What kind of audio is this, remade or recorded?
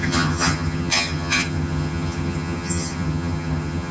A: remade